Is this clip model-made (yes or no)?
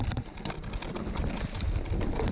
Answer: no